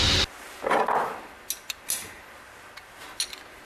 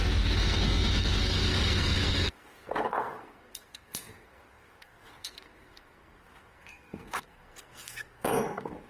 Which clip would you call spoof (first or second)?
second